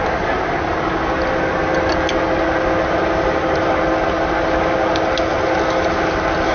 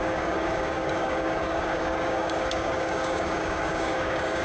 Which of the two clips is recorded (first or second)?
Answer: first